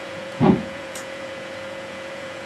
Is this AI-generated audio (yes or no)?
yes